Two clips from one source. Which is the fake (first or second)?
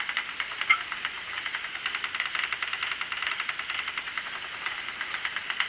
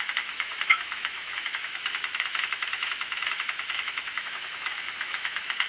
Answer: second